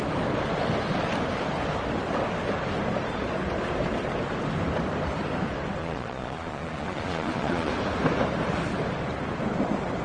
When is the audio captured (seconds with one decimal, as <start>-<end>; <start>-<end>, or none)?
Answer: 0.0-5.8; 7.7-10.0